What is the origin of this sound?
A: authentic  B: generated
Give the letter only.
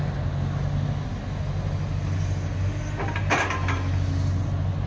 A